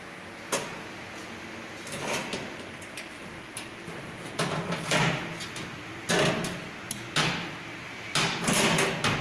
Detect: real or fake real